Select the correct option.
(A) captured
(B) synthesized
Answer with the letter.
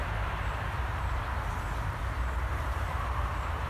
A